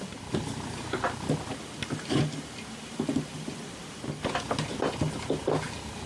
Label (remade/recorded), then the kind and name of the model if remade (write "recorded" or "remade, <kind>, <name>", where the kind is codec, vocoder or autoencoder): recorded